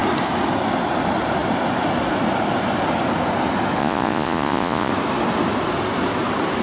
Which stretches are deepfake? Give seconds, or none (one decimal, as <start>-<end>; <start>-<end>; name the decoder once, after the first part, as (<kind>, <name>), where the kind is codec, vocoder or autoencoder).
3.8-4.9 (vocoder, Vocos)